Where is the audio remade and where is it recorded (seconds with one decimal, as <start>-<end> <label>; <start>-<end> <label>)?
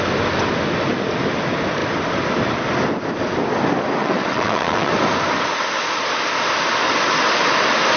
0.0-4.0 recorded; 4.0-4.9 remade; 4.9-8.0 recorded